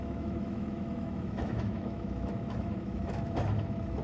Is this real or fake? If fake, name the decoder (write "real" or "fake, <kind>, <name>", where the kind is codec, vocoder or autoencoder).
fake, autoencoder, DAC-VAE